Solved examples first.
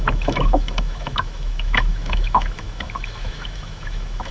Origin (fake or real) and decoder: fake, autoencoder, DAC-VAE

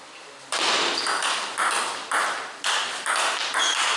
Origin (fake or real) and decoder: real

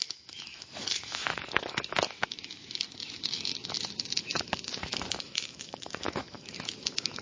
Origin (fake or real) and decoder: fake, autoencoder, DAC-VAE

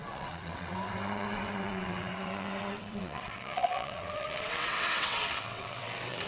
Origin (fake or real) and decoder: fake, vocoder, WaveNeXt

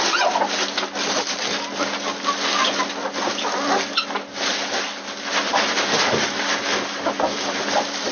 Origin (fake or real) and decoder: real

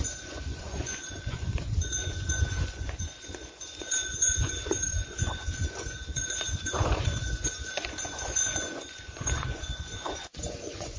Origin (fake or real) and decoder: fake, vocoder, Vocos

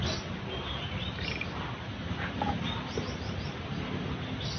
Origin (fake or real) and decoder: real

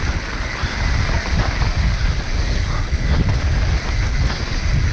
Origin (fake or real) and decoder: real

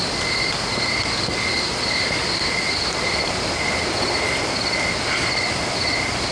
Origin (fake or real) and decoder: real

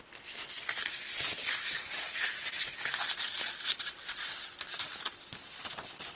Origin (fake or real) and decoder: real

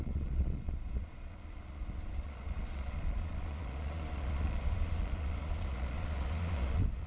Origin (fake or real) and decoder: fake, vocoder, Vocos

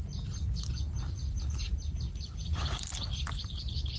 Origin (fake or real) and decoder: real